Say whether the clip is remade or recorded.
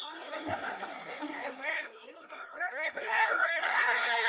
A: remade